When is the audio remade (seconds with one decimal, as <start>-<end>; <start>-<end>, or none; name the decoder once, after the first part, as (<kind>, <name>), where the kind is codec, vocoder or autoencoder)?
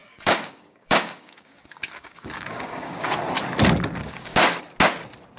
0.0-3.2 (codec, DAC); 4.0-4.6